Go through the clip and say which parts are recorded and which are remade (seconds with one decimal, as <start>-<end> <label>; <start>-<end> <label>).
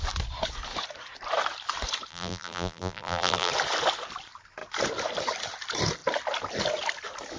0.0-2.1 recorded; 2.1-3.5 remade; 3.5-7.4 recorded